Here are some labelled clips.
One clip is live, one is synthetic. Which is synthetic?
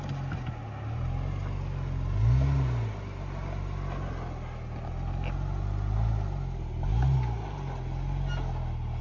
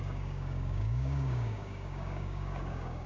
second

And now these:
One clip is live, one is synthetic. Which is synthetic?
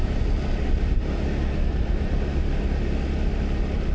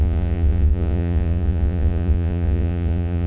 second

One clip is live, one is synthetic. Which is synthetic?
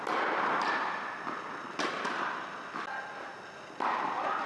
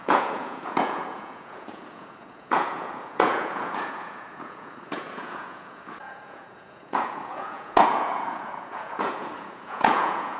second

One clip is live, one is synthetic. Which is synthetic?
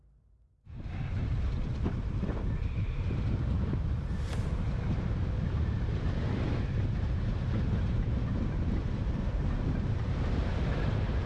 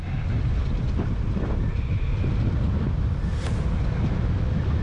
first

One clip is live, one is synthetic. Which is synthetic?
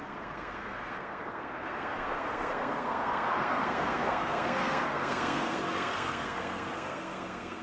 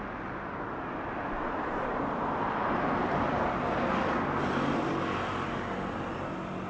first